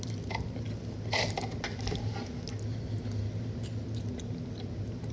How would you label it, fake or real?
real